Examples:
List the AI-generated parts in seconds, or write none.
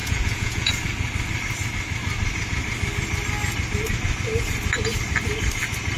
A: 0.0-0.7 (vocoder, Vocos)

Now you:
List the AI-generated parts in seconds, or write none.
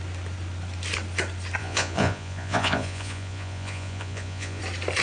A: 1.6-4.6 (vocoder, Vocos)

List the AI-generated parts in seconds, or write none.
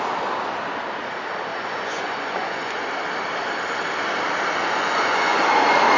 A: 1.5-2.8 (vocoder, Vocos); 4.6-5.4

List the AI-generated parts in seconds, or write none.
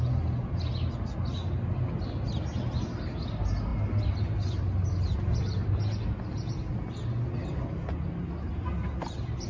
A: none